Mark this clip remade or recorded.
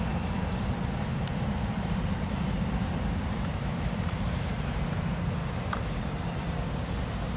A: remade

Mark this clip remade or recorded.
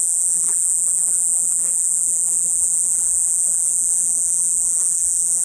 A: remade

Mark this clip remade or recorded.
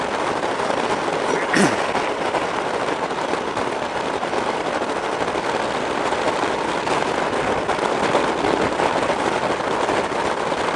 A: recorded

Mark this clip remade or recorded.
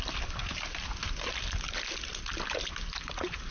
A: remade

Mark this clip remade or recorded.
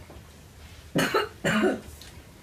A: recorded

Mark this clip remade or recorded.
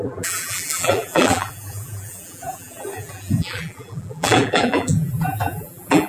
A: remade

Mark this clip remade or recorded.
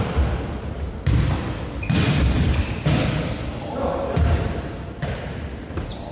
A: recorded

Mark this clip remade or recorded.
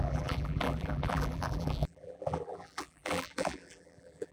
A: remade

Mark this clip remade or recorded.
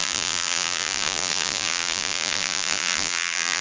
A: remade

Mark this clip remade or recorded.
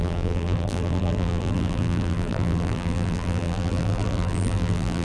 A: remade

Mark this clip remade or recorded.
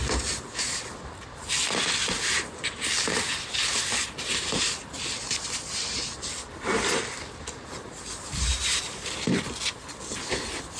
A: remade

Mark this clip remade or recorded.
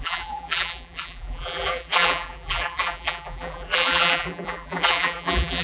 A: remade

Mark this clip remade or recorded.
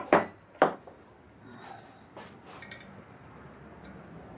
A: remade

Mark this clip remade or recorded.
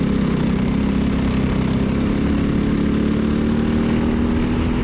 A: recorded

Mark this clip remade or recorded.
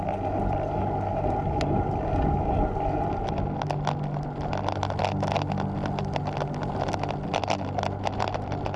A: recorded